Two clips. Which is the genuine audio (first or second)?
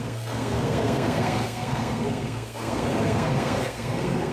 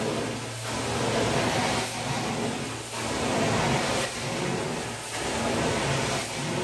second